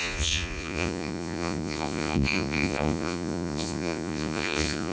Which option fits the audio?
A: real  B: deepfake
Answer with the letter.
B